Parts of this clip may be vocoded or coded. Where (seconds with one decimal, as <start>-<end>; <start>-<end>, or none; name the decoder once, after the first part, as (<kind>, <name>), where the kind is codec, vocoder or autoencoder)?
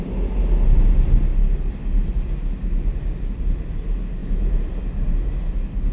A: none